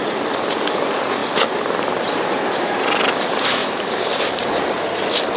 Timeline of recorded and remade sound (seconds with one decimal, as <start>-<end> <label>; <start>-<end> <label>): 0.0-3.6 recorded; 3.6-4.5 remade; 4.5-5.4 recorded